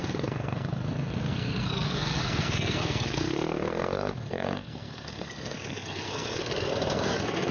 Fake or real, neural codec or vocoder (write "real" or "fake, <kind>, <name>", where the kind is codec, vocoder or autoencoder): fake, codec, SNAC